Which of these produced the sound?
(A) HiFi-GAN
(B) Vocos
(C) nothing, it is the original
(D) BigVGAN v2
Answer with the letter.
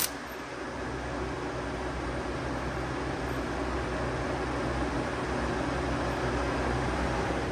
C